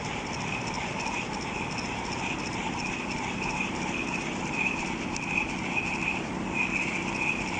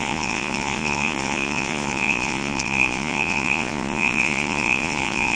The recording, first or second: first